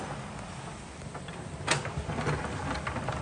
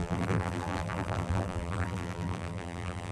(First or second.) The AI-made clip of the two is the second